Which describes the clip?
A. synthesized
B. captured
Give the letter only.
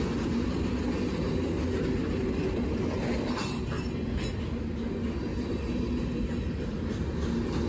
B